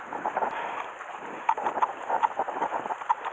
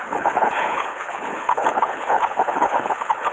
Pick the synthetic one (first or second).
second